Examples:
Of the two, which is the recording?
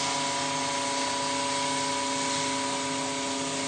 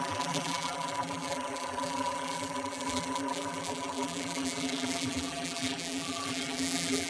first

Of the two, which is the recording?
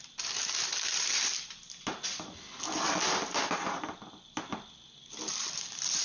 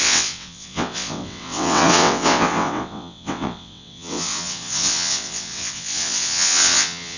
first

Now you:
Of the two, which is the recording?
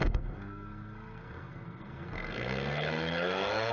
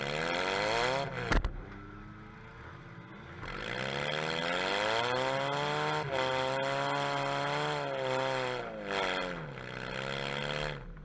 second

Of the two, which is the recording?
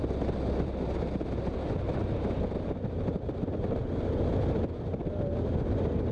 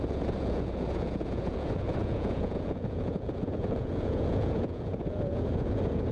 first